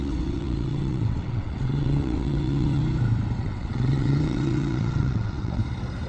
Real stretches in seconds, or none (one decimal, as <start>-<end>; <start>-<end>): 2.8-3.4; 5.6-6.1